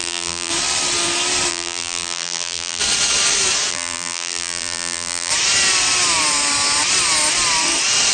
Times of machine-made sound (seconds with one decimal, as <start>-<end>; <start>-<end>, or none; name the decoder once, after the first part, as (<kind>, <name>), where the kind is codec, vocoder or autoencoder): 0.0-0.5 (vocoder, BigVGAN v2); 1.5-2.8; 3.7-5.3